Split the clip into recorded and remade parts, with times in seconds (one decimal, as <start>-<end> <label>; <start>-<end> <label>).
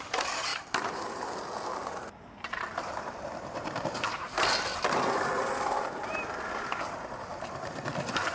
0.0-0.5 recorded; 0.5-1.2 remade; 1.2-1.8 recorded; 1.8-4.4 remade; 4.4-7.3 recorded; 7.3-7.8 remade; 7.8-8.3 recorded